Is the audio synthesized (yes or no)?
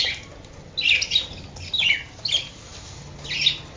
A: no